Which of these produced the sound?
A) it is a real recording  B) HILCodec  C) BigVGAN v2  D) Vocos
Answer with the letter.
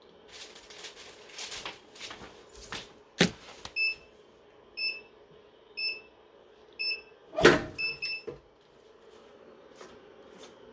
A